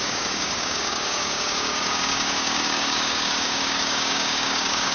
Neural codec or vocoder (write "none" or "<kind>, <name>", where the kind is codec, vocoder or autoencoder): codec, DAC